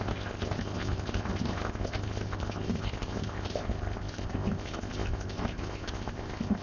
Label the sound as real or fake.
fake